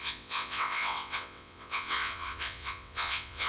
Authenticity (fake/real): fake